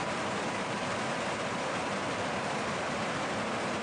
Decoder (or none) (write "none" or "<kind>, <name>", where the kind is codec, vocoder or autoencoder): vocoder, BigVGAN v2